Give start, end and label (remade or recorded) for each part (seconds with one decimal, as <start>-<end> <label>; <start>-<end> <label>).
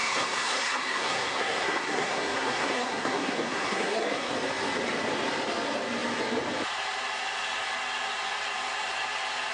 0.0-4.3 remade; 4.3-9.5 recorded